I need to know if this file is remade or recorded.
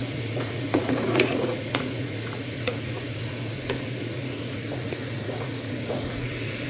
remade